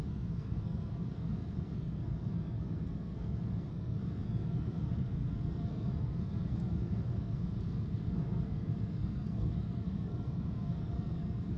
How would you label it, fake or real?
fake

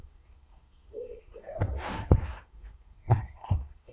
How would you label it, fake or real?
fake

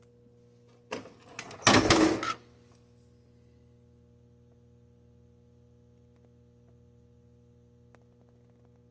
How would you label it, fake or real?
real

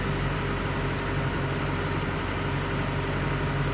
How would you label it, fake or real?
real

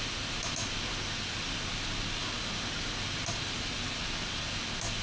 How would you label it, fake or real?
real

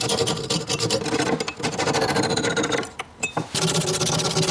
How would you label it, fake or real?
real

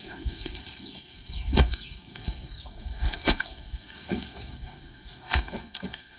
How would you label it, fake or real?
fake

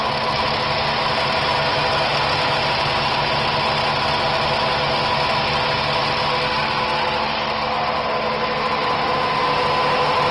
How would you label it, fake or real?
real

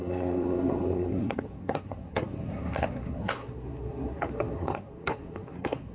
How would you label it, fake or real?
fake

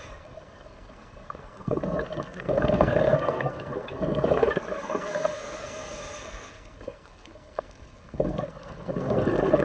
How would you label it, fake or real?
fake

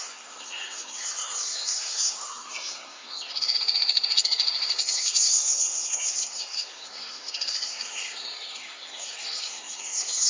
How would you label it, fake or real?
fake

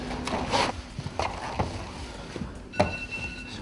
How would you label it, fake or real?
real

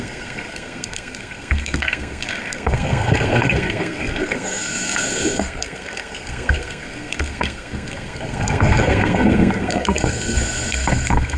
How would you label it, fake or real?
fake